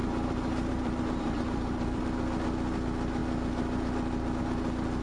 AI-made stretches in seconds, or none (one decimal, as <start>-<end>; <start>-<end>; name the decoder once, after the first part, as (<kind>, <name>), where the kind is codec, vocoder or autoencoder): 0.0-2.0 (vocoder, BigVGAN v2)